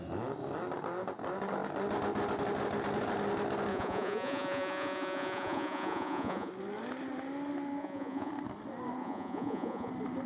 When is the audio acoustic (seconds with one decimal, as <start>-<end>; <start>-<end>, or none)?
0.0-3.7; 6.5-7.8; 8.3-9.0; 9.9-10.3